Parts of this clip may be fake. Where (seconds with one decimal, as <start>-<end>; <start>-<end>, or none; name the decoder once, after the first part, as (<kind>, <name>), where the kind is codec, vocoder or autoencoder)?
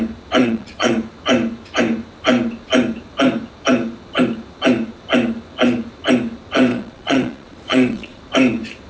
0.4-0.9 (vocoder, Vocos); 6.7-8.2